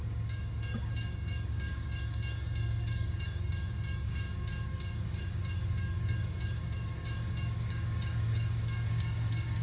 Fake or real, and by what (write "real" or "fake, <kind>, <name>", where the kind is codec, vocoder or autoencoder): fake, codec, DAC